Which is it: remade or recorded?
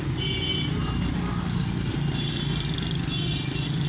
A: recorded